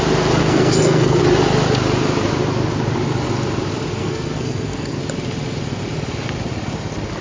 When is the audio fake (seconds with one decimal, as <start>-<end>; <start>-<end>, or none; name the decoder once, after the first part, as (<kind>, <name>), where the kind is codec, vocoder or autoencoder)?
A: 0.4-1.2 (codec, SNAC); 4.0-5.0